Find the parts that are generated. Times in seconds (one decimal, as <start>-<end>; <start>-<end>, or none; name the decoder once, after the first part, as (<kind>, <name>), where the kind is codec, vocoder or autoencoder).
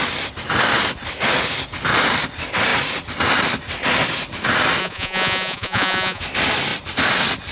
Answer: 4.8-6.2 (vocoder, Vocos)